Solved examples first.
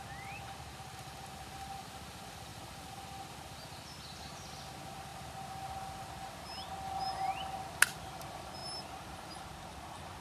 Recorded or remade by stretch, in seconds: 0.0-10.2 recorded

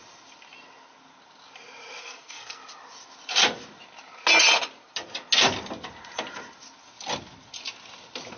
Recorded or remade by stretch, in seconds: 0.0-2.0 recorded; 2.0-2.6 remade; 2.6-8.4 recorded

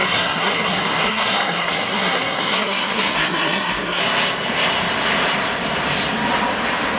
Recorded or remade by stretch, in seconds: 0.0-4.0 remade; 4.0-7.0 recorded

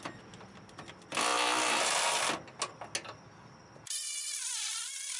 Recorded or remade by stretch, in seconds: 0.0-5.2 recorded

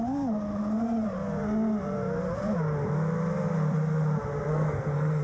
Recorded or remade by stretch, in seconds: 0.0-4.5 recorded; 4.5-5.2 remade

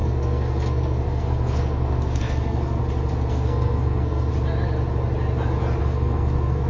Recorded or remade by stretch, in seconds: 0.0-2.8 remade; 2.8-3.3 recorded; 3.3-4.3 remade; 4.3-5.8 recorded; 5.8-6.7 remade

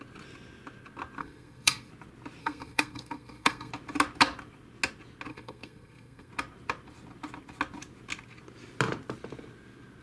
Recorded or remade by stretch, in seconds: 0.0-1.2 recorded; 1.2-1.9 remade; 1.9-2.4 recorded; 2.4-3.7 remade; 3.7-5.3 recorded; 5.3-6.3 remade; 6.3-10.0 recorded